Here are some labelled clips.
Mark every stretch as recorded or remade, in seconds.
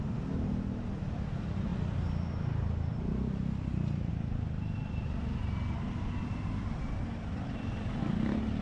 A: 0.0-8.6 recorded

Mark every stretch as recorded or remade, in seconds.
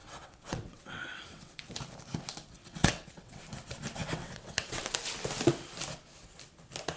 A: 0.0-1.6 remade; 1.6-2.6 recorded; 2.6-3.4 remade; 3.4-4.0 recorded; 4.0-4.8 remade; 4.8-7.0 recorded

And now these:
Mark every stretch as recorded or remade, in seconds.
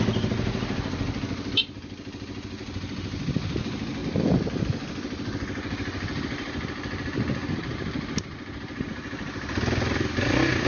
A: 0.0-10.7 recorded